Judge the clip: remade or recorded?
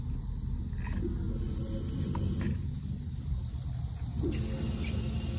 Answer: recorded